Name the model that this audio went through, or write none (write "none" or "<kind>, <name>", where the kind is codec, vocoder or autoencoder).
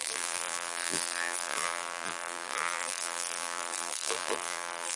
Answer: vocoder, BigVGAN v2